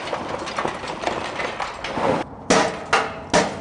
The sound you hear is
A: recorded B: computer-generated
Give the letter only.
A